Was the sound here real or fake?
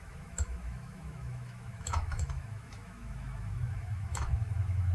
fake